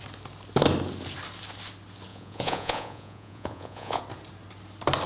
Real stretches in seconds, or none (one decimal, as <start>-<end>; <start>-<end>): 0.0-2.1; 4.0-5.1